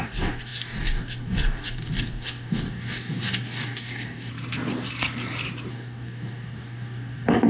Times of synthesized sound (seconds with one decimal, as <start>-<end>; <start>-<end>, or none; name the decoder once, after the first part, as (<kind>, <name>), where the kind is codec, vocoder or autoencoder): 0.0-4.3 (codec, DAC); 5.7-7.5